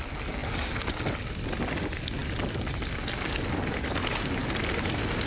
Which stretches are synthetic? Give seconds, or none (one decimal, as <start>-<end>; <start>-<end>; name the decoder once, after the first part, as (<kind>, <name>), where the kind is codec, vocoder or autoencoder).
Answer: none